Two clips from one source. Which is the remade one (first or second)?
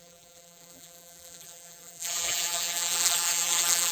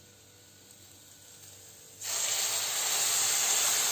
first